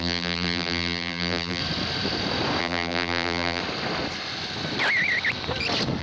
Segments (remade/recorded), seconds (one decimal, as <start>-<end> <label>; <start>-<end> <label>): 0.0-1.6 remade; 1.6-2.6 recorded; 2.6-3.6 remade; 3.6-6.0 recorded